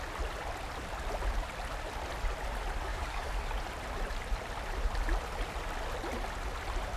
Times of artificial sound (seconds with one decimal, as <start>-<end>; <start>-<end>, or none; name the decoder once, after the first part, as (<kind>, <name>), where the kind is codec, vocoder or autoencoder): 2.9-3.5 (codec, DAC)